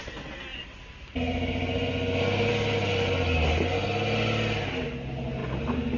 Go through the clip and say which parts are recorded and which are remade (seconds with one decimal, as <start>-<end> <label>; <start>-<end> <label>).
0.0-6.0 recorded